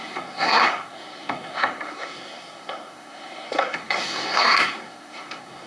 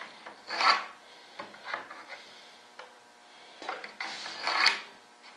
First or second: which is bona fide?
second